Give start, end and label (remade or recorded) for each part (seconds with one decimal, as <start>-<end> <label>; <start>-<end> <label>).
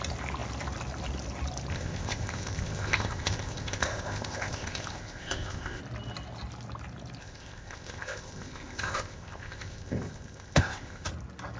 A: 0.0-1.7 recorded; 1.7-5.8 remade; 5.8-7.2 recorded; 7.2-11.1 remade; 11.1-11.6 recorded